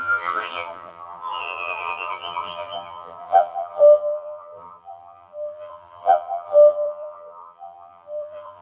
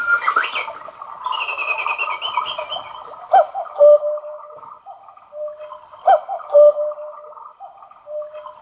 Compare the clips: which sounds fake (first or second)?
first